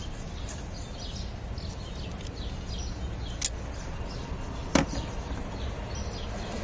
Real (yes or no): yes